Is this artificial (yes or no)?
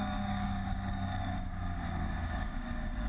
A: yes